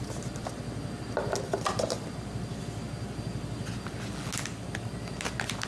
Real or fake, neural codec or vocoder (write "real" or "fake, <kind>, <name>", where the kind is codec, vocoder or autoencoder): real